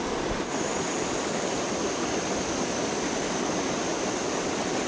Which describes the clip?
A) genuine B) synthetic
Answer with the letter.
A